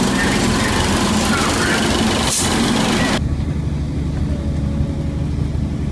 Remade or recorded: recorded